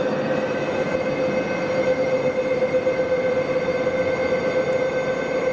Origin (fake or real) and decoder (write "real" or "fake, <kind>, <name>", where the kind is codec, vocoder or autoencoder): real